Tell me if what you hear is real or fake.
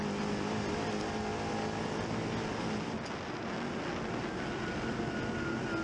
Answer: real